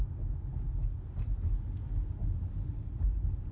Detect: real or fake real